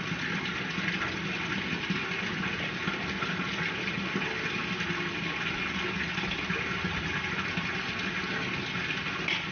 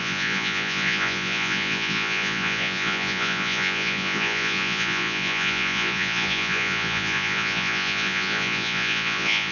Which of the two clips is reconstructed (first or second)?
second